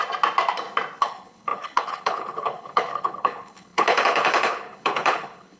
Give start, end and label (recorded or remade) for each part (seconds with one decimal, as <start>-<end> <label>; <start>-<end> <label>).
0.0-1.0 recorded; 1.0-5.6 remade